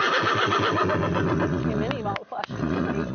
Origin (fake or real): real